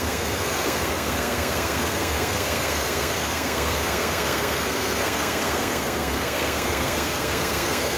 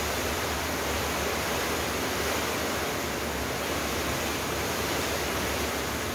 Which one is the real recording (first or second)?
second